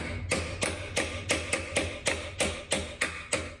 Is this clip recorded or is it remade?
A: recorded